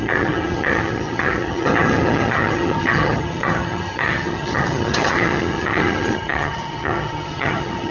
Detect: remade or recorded remade